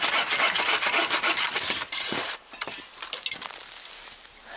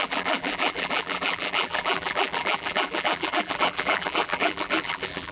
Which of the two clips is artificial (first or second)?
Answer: second